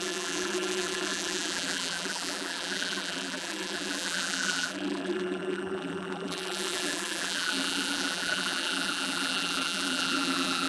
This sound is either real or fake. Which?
fake